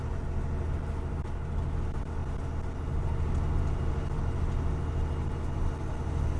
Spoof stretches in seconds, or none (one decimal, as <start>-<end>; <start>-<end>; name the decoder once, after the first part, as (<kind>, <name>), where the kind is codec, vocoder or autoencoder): none